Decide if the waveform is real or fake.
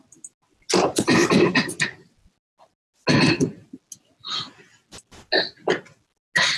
real